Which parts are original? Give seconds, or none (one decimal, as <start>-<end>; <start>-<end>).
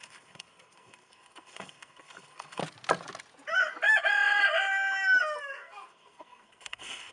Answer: 2.6-5.4